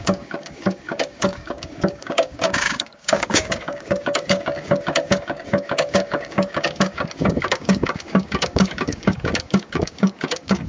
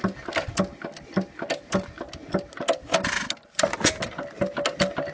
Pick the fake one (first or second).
first